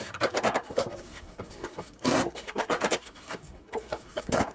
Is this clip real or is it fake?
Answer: fake